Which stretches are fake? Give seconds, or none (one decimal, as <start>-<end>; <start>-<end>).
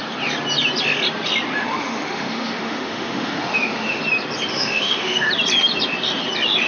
1.6-4.0; 4.5-5.3